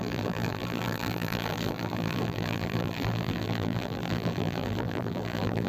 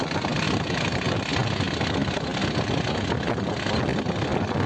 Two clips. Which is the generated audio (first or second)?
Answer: first